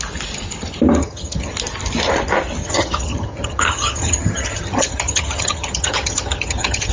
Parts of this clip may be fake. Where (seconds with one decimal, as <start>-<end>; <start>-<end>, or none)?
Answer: 1.0-1.5; 2.6-6.9